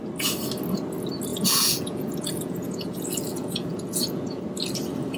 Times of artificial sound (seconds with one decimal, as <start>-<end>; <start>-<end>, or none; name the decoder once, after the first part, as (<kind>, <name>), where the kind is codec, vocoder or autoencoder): 1.3-4.4 (vocoder, Vocos)